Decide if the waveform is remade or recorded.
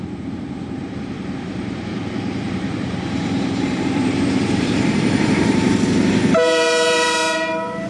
remade